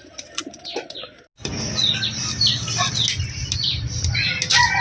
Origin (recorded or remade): recorded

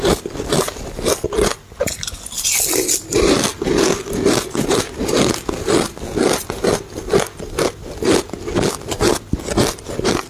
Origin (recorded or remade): recorded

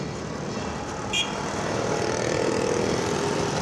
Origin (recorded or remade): recorded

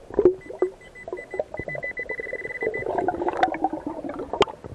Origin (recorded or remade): recorded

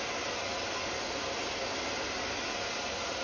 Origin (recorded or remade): recorded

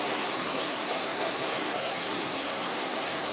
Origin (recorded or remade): remade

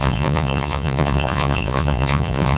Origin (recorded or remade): remade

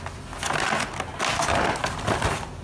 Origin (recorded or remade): recorded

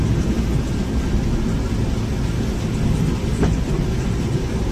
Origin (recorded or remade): recorded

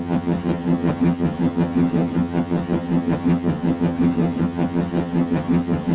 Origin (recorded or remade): remade